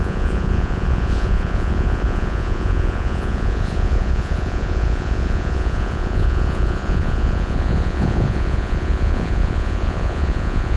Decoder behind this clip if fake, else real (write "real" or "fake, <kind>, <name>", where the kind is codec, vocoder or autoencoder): fake, vocoder, Vocos